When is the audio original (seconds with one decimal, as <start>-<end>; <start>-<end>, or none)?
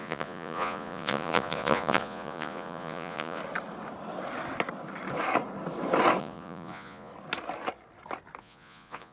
3.4-6.2; 7.1-8.4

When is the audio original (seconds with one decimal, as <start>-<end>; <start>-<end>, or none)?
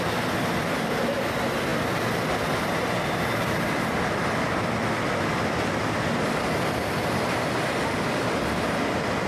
0.0-9.3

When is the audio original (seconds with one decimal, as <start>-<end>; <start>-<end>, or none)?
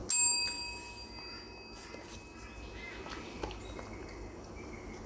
0.0-5.1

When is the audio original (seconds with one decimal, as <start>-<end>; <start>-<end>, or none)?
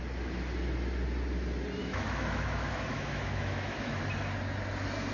0.0-1.8; 4.0-5.1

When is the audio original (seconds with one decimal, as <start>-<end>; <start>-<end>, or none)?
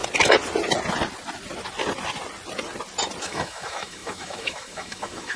0.0-3.2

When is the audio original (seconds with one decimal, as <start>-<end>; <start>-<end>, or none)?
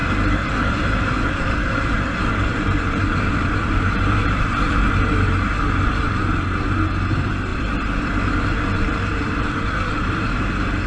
4.8-7.5; 10.5-10.9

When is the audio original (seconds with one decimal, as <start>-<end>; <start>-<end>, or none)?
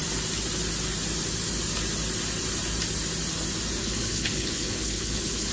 0.0-3.8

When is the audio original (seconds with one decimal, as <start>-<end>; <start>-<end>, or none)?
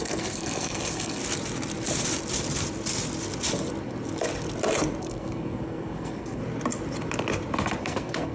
1.2-5.0; 6.4-7.8